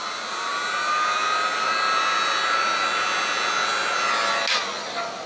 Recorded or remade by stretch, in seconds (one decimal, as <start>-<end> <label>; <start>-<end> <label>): 0.0-5.3 recorded